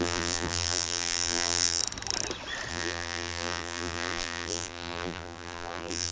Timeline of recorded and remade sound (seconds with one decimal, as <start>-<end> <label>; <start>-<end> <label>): 0.0-1.8 remade; 1.8-2.7 recorded; 2.7-6.1 remade